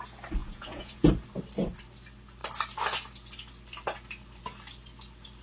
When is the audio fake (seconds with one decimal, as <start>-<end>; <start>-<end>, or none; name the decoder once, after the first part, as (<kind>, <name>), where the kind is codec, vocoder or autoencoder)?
0.4-1.1 (vocoder, Vocos)